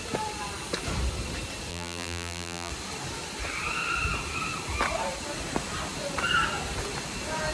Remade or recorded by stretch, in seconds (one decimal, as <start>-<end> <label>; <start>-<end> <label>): 0.0-1.7 recorded; 1.7-2.7 remade; 2.7-7.5 recorded